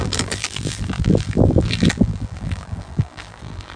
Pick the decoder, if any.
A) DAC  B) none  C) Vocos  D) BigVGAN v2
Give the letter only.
D